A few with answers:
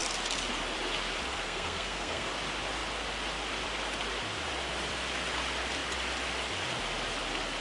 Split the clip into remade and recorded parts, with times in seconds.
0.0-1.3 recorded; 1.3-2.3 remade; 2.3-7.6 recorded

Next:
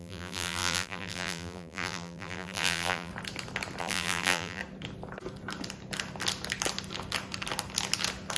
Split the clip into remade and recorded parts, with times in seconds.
0.0-3.1 remade; 3.1-3.8 recorded; 3.8-4.6 remade; 4.6-8.4 recorded

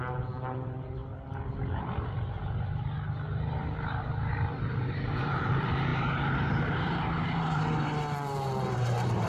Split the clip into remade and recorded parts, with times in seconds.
0.0-1.0 remade; 1.0-4.5 recorded; 4.5-9.3 remade

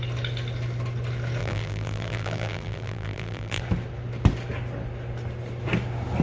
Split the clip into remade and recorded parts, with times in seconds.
0.0-1.4 recorded; 1.4-3.6 remade; 3.6-6.2 recorded